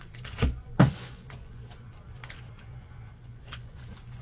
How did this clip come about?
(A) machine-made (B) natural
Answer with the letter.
A